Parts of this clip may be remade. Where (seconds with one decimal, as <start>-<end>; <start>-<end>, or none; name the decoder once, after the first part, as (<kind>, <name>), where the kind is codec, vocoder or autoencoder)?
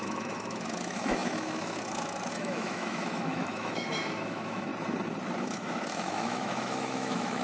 0.0-4.7 (autoencoder, DAC-VAE); 5.4-7.4